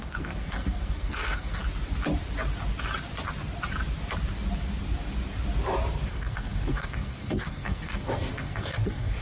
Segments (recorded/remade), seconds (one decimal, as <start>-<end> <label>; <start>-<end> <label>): 0.0-1.6 remade; 1.6-6.1 recorded; 6.1-9.2 remade